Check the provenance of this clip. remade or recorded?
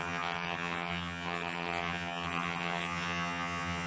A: remade